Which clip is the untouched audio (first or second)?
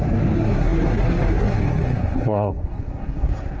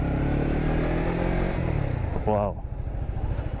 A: second